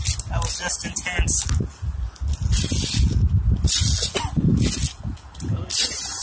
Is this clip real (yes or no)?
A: yes